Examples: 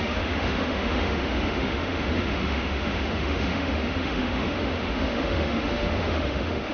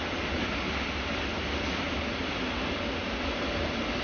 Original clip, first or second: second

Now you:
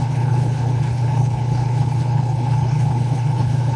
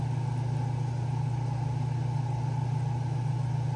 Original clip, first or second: second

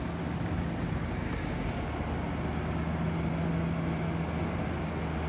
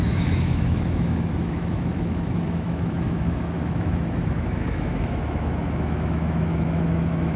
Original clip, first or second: first